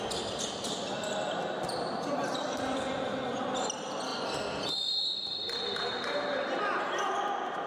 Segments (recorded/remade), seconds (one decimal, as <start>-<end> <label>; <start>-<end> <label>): 0.0-7.7 recorded